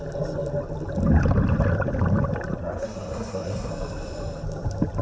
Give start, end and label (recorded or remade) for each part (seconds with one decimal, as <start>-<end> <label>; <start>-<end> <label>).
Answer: 0.0-2.6 recorded; 2.6-3.7 remade; 3.7-5.0 recorded